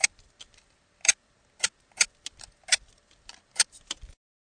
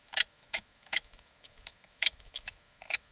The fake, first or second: second